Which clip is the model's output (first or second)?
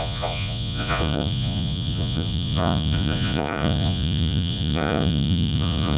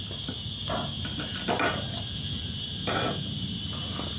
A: first